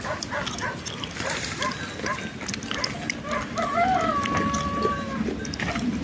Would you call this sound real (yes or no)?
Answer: yes